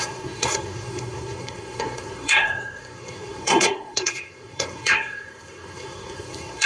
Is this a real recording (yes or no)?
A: no